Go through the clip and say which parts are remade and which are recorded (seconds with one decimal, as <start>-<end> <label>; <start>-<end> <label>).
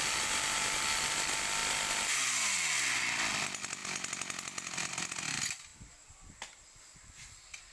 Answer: 0.0-7.7 recorded